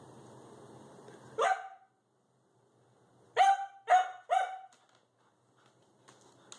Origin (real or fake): real